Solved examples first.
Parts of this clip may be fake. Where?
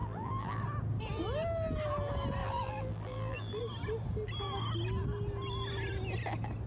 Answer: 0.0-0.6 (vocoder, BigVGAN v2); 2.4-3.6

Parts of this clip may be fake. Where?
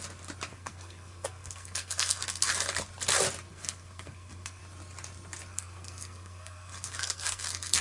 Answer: 0.5-2.5 (codec, SNAC); 3.5-4.6; 5.5-7.8